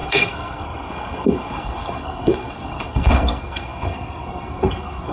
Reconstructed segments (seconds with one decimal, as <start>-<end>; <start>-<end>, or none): 0.0-5.1